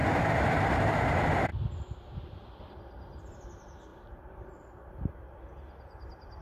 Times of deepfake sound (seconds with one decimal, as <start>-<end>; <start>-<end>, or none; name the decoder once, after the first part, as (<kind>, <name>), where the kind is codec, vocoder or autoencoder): 0.5-1.5 (vocoder, BigVGAN v2); 2.6-6.4